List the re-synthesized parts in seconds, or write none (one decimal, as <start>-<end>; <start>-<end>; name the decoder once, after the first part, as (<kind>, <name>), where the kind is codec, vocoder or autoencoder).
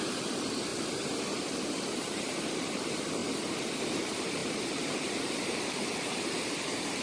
0.0-0.7 (vocoder, BigVGAN v2); 1.7-3.2; 3.8-7.0